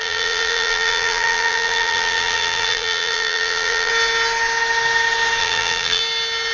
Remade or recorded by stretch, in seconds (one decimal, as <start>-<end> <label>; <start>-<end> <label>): 0.0-3.9 remade; 3.9-5.4 recorded; 5.4-6.0 remade; 6.0-6.5 recorded